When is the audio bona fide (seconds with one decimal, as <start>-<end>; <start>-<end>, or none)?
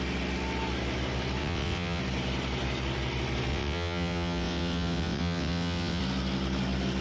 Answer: 0.0-1.4; 2.0-3.5; 6.0-7.0